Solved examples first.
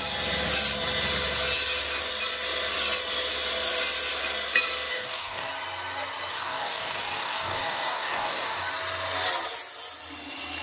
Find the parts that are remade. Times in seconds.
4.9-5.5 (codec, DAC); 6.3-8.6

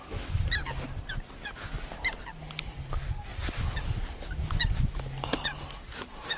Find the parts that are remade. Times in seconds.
none

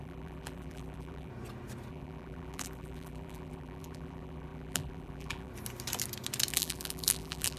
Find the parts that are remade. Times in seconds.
0.0-1.3 (vocoder, BigVGAN v2); 1.9-5.5; 6.5-7.6